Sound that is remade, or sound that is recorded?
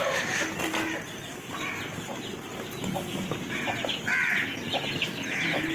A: recorded